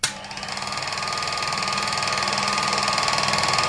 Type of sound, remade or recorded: recorded